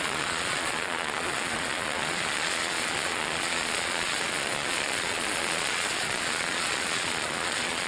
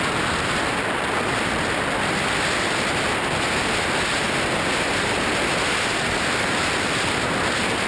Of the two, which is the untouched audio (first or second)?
second